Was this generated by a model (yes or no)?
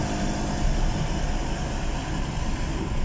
no